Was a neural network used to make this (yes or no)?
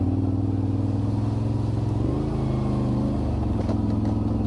no